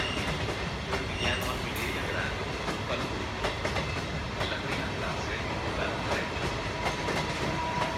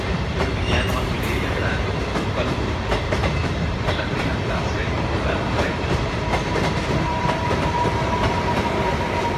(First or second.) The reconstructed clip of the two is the second